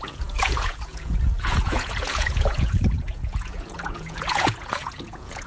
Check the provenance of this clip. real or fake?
fake